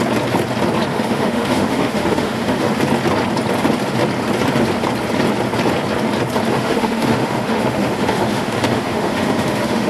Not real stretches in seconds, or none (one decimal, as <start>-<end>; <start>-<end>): 0.9-2.8; 6.5-9.9